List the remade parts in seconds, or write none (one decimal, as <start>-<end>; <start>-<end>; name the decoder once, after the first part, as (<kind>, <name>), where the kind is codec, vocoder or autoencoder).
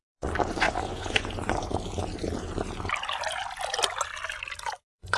0.0-1.7 (vocoder, Vocos); 4.8-5.2